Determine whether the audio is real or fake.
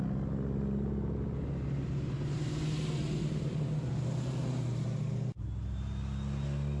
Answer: real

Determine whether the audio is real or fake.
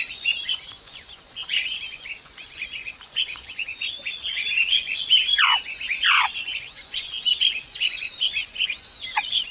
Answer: fake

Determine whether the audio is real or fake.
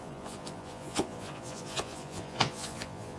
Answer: fake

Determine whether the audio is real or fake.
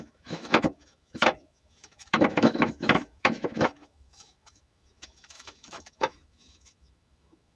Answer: fake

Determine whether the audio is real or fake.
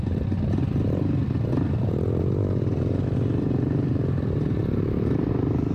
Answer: real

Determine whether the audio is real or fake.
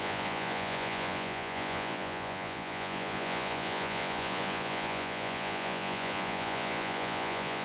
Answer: fake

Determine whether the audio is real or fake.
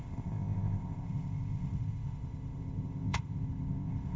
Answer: fake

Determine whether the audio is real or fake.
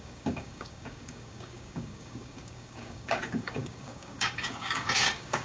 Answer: fake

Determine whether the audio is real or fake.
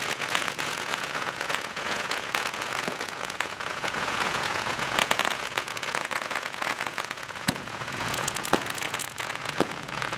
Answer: fake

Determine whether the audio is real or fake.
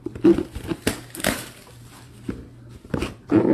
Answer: fake